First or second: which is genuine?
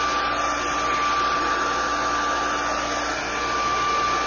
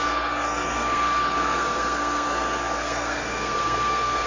first